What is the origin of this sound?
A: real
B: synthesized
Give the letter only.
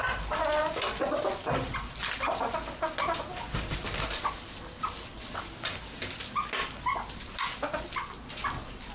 A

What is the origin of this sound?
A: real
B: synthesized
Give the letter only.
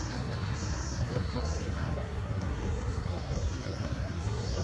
B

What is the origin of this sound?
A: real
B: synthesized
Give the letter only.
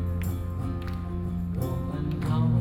A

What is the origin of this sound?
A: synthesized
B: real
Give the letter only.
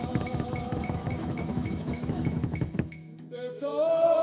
A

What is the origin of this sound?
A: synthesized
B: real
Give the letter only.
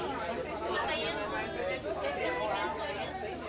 B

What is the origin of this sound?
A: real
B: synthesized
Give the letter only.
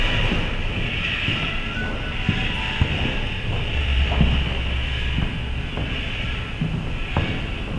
A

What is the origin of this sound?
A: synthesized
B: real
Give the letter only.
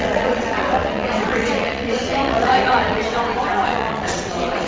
A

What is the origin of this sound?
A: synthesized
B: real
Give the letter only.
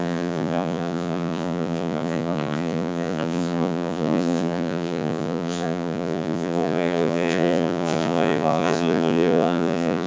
A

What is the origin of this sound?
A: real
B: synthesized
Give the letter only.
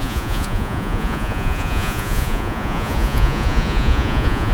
B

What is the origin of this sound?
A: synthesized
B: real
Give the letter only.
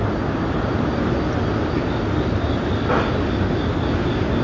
B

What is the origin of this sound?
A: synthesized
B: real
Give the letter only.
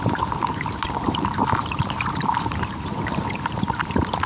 A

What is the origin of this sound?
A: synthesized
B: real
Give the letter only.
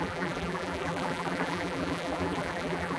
A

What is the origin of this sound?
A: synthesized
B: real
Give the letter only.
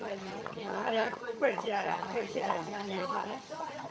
A